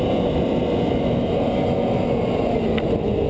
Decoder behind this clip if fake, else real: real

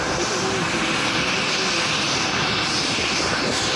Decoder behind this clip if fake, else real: real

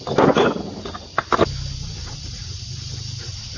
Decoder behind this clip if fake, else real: real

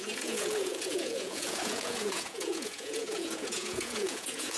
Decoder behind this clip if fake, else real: fake, vocoder, Vocos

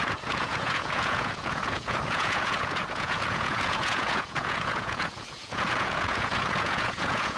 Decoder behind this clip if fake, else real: fake, vocoder, Vocos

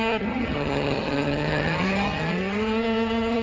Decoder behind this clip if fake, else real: fake, vocoder, HiFi-GAN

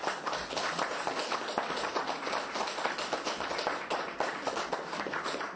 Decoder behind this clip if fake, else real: real